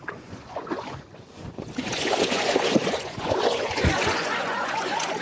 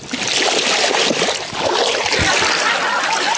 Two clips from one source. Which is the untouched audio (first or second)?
second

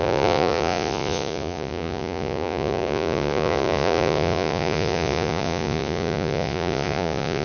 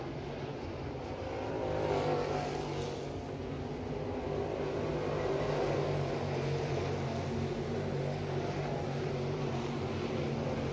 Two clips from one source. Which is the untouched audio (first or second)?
second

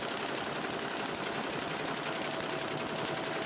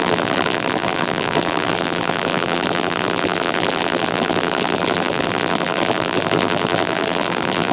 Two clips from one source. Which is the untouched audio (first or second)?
first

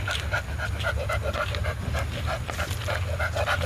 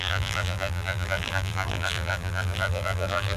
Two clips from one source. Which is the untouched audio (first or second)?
first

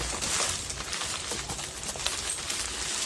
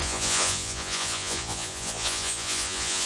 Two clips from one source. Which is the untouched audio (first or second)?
first